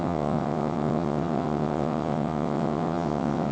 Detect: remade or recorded remade